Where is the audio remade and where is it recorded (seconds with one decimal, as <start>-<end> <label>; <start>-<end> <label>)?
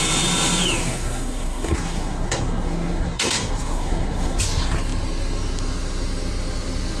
0.0-0.8 recorded; 0.8-4.4 remade; 4.4-7.0 recorded